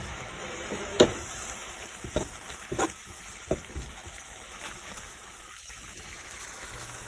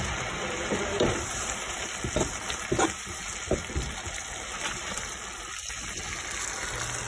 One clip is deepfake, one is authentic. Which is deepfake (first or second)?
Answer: first